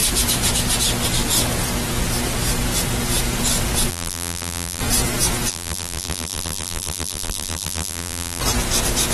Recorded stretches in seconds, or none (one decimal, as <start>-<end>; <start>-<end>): 0.0-3.9; 4.8-5.5; 8.4-9.1